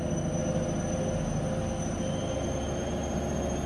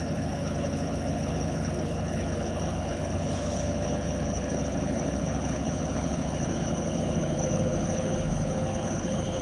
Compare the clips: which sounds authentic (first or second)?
first